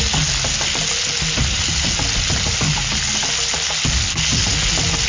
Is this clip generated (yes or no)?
no